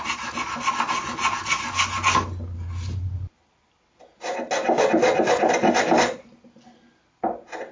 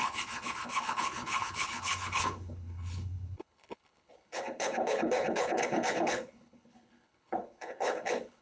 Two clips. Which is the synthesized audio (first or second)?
second